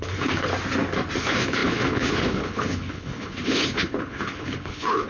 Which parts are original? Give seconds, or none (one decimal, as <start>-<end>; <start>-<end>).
0.5-1.2